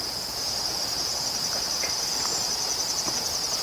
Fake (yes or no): yes